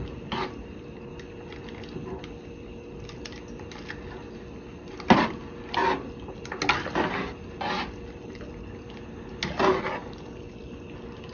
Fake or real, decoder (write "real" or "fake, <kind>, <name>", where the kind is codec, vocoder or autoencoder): real